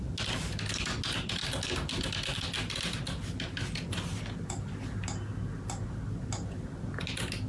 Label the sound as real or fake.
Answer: real